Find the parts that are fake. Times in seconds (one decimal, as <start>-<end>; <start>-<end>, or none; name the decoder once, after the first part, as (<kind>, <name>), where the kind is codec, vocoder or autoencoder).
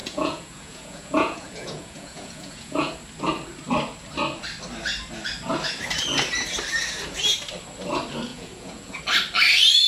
0.0-2.9 (vocoder, Vocos); 8.3-9.0